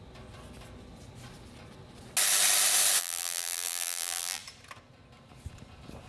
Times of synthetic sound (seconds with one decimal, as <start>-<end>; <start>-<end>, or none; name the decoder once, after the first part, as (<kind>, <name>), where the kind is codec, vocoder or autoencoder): 3.0-4.4 (vocoder, BigVGAN v2)